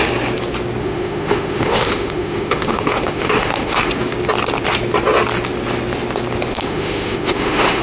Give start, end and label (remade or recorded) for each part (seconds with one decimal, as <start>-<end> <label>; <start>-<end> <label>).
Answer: 0.0-0.8 recorded; 0.8-3.9 remade; 3.9-6.5 recorded; 6.5-7.8 remade